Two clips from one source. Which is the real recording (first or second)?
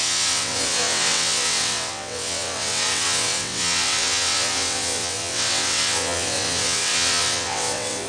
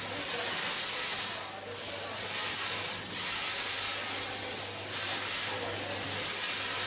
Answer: second